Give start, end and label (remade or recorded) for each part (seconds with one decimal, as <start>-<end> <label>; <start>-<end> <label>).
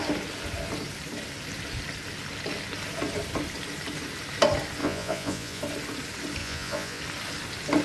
0.0-4.8 recorded; 4.8-5.6 remade; 5.6-6.4 recorded; 6.4-7.0 remade; 7.0-7.8 recorded